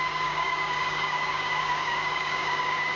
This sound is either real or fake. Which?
fake